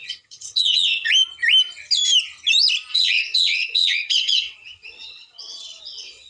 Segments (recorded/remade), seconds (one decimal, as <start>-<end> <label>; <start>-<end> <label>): 0.0-1.1 remade; 1.1-2.9 recorded; 2.9-6.3 remade